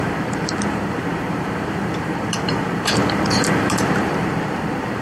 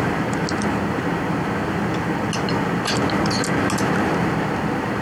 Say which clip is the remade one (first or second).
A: first